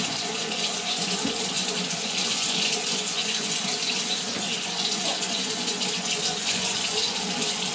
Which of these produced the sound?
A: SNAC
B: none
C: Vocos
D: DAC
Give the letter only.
C